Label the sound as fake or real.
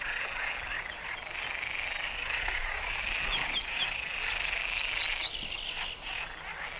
real